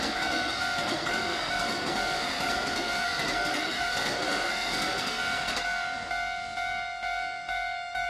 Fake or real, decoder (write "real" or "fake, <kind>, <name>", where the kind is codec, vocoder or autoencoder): fake, codec, SNAC